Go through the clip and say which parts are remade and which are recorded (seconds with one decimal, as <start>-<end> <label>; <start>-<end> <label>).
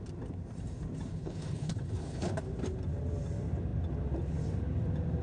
0.0-1.1 recorded; 1.1-2.3 remade; 2.3-5.2 recorded